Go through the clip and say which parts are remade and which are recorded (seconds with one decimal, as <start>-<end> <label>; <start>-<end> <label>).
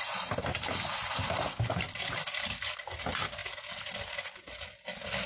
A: 0.0-5.3 recorded